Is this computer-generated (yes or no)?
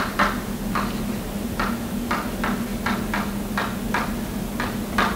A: no